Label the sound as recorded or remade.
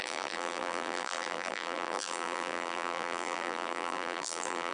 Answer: remade